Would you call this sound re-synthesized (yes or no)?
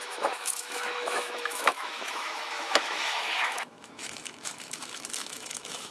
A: yes